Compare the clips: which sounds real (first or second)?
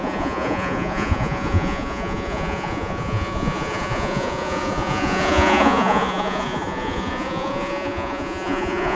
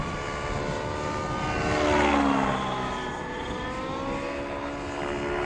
second